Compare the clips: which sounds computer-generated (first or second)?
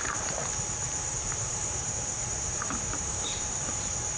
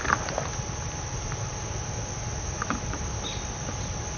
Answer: first